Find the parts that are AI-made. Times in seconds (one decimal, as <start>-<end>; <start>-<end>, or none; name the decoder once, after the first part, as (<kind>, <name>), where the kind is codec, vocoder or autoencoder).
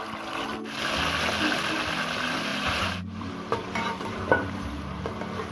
2.5-5.1 (vocoder, BigVGAN v2)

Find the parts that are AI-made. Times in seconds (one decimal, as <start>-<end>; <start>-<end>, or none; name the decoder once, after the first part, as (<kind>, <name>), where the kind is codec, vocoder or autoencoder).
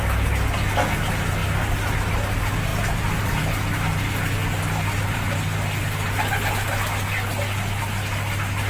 2.7-3.4 (vocoder, BigVGAN v2)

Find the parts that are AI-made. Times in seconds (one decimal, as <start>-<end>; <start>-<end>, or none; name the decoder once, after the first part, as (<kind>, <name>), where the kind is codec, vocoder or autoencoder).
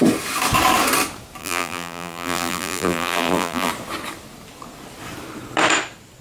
1.4-3.7 (vocoder, BigVGAN v2)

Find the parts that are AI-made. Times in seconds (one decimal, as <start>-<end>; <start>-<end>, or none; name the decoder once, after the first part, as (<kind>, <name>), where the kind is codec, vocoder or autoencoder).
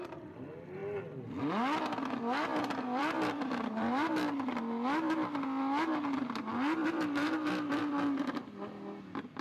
2.5-4.1 (vocoder, BigVGAN v2); 6.8-7.8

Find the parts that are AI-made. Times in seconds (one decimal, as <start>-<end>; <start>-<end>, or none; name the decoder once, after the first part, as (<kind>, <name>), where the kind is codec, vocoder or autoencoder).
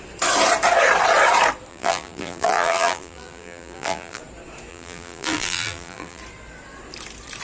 1.7-4.2 (vocoder, BigVGAN v2); 4.7-6.2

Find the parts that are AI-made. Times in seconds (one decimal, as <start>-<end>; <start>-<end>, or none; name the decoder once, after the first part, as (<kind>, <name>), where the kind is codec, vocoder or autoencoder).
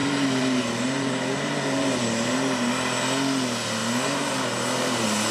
0.0-2.7 (vocoder, BigVGAN v2); 3.8-5.3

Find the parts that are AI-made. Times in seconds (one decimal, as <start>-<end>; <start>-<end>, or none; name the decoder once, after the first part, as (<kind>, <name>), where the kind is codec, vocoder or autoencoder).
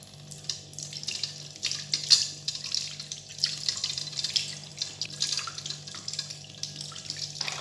3.3-4.3 (vocoder, BigVGAN v2)